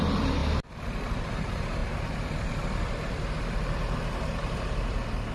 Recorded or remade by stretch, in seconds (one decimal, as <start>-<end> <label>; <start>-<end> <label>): 0.0-0.4 remade; 0.4-1.3 recorded; 1.3-5.3 remade